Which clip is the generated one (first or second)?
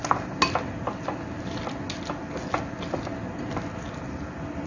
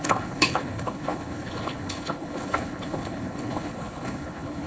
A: second